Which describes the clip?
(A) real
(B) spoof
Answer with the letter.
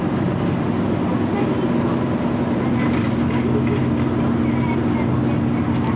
A